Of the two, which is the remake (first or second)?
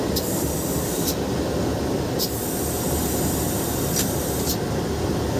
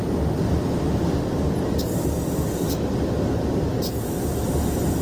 first